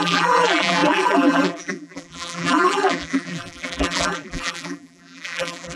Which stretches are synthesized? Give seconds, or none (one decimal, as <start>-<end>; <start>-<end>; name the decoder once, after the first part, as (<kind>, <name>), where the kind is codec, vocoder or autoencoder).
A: 0.0-5.8 (vocoder, BigVGAN v2)

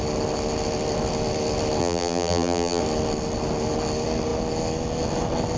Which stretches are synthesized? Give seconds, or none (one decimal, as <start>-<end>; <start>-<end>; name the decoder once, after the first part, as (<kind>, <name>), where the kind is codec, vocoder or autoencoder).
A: 1.8-2.8 (vocoder, BigVGAN v2)

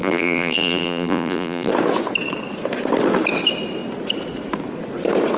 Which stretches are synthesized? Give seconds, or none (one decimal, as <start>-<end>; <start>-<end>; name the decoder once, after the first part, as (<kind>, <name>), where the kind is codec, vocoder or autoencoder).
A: 0.0-1.7 (vocoder, BigVGAN v2)

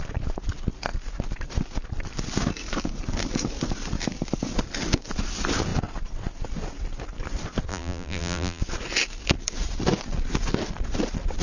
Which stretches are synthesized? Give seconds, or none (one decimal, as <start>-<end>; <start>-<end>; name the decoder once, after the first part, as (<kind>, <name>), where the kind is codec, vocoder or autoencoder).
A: 7.7-8.6 (vocoder, BigVGAN v2)

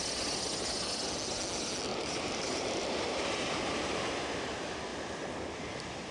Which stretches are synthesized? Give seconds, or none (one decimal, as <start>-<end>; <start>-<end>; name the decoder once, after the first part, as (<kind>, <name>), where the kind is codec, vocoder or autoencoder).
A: 1.9-3.2 (vocoder, BigVGAN v2)

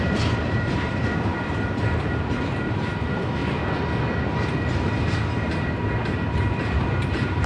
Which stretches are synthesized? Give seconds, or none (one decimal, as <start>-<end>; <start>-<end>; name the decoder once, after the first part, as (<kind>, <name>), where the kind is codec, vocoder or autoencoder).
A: 0.0-3.4 (vocoder, BigVGAN v2); 4.4-7.5

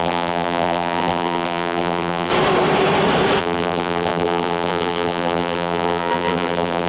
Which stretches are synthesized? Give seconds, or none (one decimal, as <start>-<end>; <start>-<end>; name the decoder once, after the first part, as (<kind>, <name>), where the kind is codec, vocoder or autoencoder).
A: 0.0-2.3 (vocoder, BigVGAN v2); 3.4-6.9

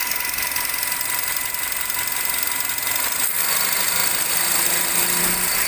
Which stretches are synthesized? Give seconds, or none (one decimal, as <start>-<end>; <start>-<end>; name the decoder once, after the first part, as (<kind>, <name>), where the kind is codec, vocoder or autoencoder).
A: none